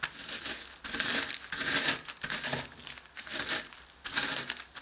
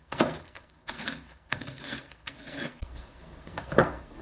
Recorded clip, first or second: first